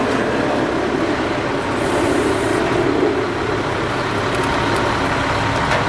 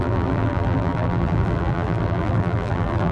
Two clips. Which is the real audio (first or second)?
first